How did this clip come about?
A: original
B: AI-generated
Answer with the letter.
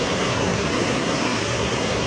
B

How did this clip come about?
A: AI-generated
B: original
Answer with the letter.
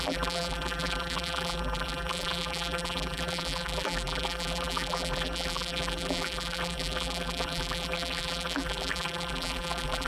A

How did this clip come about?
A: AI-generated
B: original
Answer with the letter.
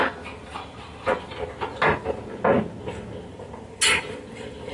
B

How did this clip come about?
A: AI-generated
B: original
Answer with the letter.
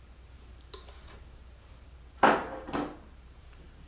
A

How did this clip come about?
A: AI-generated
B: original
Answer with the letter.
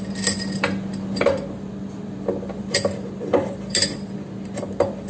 A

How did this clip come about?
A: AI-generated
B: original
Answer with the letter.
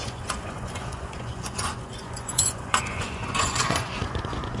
A